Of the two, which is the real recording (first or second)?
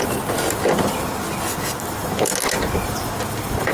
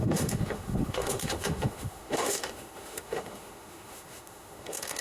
first